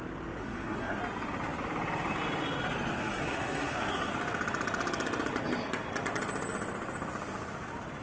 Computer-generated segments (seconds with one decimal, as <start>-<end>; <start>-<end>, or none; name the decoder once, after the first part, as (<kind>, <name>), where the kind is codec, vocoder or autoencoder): 0.4-1.0 (codec, SNAC); 3.0-4.1